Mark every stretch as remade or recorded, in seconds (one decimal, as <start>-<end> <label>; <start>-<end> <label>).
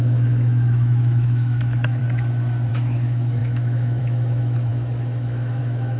0.0-2.0 remade; 2.0-2.7 recorded; 2.7-6.0 remade